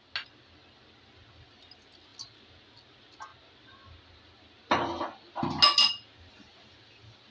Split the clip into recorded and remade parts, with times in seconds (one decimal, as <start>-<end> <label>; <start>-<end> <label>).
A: 0.0-7.3 recorded